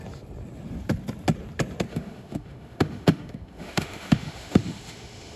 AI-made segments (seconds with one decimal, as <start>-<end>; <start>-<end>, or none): 1.9-5.4